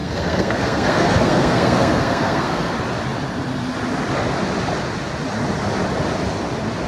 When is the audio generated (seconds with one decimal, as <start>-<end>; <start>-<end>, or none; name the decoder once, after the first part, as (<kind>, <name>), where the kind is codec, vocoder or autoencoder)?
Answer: 0.0-2.7 (codec, SNAC)